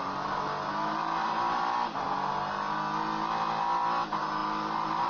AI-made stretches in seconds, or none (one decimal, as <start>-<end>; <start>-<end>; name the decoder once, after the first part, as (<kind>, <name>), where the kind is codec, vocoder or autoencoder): none